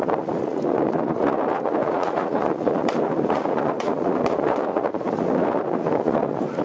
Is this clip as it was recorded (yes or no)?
no